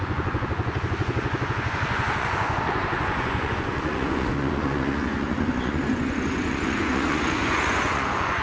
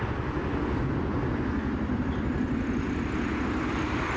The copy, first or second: first